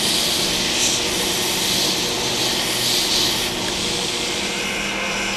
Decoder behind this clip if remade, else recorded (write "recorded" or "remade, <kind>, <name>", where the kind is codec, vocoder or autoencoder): recorded